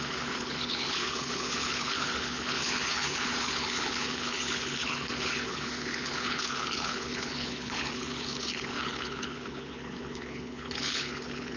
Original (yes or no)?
no